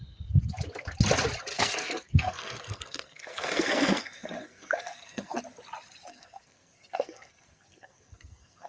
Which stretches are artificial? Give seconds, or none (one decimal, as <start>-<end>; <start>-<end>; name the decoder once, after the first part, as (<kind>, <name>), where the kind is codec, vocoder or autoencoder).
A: 1.5-5.4 (codec, SNAC); 6.1-8.7